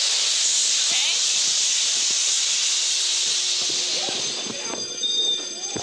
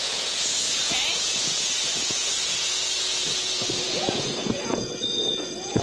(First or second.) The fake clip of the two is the second